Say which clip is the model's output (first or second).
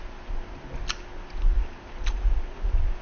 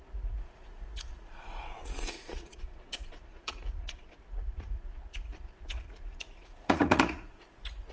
second